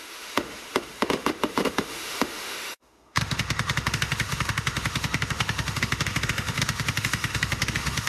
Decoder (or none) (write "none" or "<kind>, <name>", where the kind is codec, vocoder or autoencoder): autoencoder, DAC-VAE